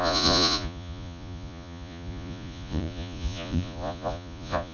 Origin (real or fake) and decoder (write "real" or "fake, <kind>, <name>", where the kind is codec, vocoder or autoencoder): fake, vocoder, Vocos